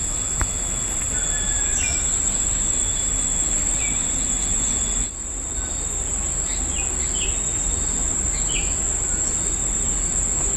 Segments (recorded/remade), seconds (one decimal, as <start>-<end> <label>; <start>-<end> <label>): 0.0-1.7 recorded; 1.7-3.8 remade; 3.8-7.5 recorded; 7.5-8.6 remade; 8.6-10.6 recorded